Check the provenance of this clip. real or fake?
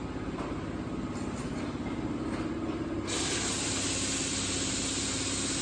real